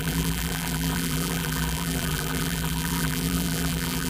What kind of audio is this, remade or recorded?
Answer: remade